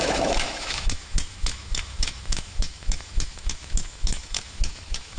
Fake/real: fake